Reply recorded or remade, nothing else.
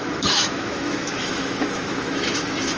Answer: remade